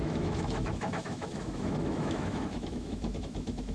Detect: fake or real fake